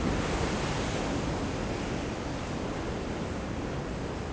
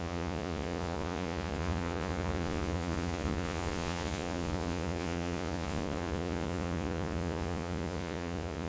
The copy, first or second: second